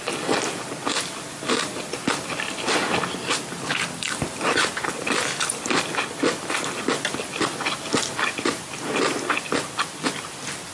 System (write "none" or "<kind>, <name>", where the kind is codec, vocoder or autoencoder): none